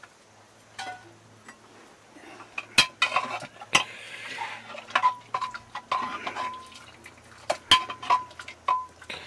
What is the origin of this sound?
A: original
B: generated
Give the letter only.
A